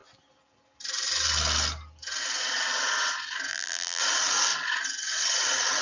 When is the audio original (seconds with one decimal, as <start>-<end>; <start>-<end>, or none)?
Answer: 0.0-3.5; 4.0-5.8

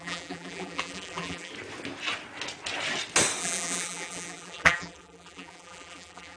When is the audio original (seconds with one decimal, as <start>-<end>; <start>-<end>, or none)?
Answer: 1.5-3.4